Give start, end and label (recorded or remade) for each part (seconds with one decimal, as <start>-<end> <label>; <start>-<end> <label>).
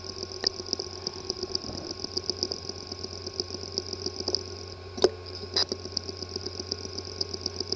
0.0-7.8 recorded